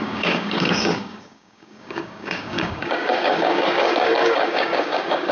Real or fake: fake